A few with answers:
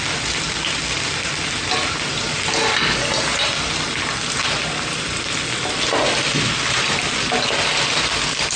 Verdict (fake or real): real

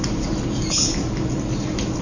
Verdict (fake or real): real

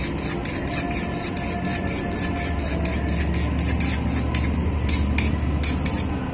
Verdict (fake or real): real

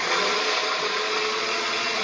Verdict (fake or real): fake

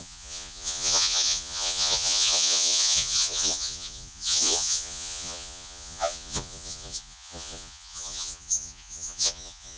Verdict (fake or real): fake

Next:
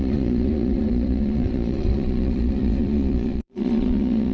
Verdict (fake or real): fake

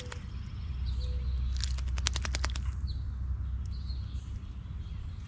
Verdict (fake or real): real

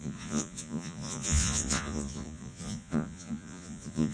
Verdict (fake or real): fake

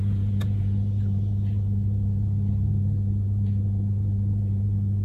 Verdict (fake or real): fake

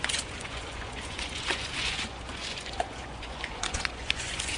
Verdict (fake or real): fake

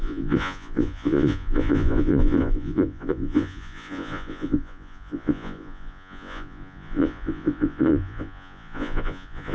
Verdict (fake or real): fake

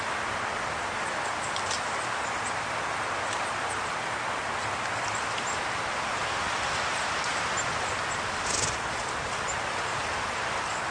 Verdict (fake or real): real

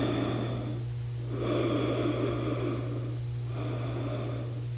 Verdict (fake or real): real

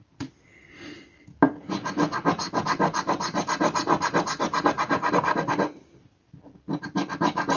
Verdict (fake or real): real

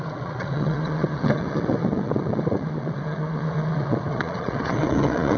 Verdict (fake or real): fake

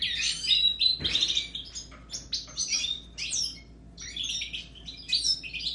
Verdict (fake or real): real